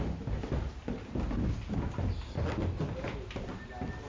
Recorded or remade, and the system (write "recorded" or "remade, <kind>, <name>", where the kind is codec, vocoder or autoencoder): recorded